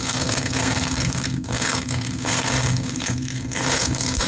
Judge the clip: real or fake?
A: fake